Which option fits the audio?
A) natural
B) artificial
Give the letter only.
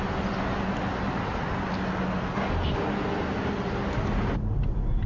A